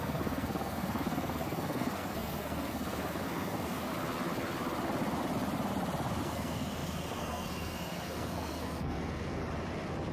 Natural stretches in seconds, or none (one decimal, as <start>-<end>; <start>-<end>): 3.9-6.2; 9.4-10.1